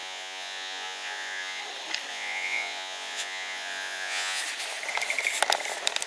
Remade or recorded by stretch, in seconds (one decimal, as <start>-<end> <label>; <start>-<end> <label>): 0.0-1.6 remade; 1.6-2.1 recorded; 2.1-4.4 remade; 4.4-6.1 recorded